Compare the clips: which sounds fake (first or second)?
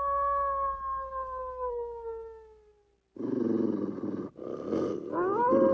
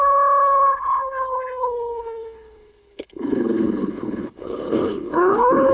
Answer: second